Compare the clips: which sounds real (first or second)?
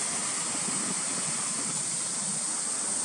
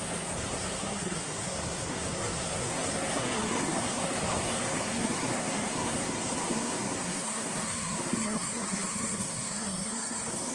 first